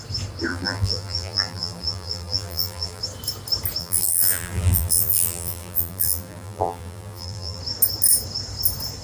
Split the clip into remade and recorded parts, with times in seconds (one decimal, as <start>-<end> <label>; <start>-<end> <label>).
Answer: 0.0-0.5 recorded; 0.5-3.0 remade; 3.0-3.8 recorded; 3.8-7.6 remade; 7.6-9.0 recorded